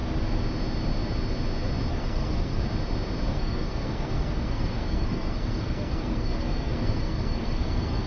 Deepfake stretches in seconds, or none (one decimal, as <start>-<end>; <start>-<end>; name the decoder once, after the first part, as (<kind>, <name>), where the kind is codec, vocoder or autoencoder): 1.9-2.6 (codec, SNAC); 3.3-8.1